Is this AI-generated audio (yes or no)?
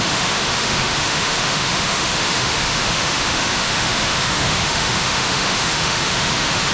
yes